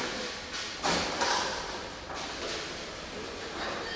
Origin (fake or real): real